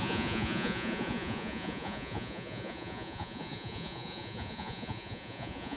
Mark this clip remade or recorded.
remade